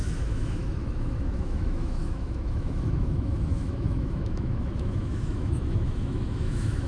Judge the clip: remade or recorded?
remade